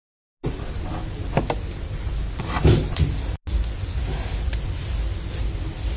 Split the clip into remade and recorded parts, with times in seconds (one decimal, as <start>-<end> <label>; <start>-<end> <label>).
0.0-6.0 recorded